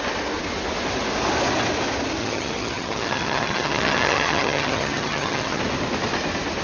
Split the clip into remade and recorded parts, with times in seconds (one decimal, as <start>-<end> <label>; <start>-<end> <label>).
0.0-2.2 recorded; 2.2-5.6 remade; 5.6-6.6 recorded

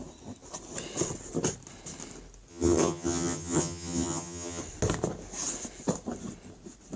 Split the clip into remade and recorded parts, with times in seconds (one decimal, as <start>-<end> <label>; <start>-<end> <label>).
0.0-2.5 recorded; 2.5-4.6 remade; 4.6-7.0 recorded

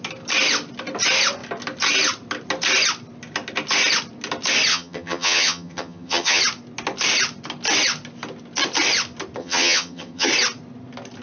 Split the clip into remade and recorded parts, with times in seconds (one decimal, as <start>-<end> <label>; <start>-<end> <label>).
0.0-4.7 recorded; 4.7-6.4 remade; 6.4-9.4 recorded; 9.4-10.3 remade; 10.3-11.2 recorded